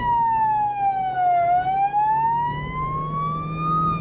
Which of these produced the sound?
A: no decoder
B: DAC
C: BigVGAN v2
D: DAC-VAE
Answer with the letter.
A